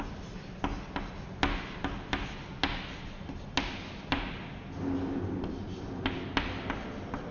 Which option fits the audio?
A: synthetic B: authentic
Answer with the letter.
B